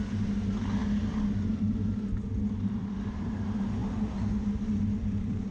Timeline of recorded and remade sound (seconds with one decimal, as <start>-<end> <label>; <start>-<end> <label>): 0.0-2.8 recorded; 2.8-3.4 remade; 3.4-5.5 recorded